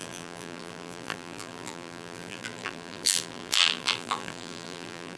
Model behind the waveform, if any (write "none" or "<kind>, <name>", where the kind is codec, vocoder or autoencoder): vocoder, BigVGAN v2